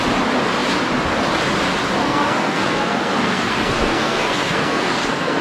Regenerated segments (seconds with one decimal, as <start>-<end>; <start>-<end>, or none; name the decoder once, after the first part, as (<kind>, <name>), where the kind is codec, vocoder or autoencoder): 2.0-5.4 (codec, SNAC)